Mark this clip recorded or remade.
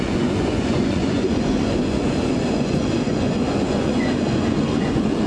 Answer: remade